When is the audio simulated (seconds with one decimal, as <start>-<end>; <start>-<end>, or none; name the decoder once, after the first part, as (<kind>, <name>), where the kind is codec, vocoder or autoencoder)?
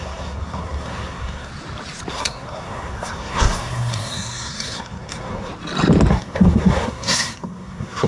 0.0-1.5 (codec, SNAC); 2.1-5.5; 6.1-8.1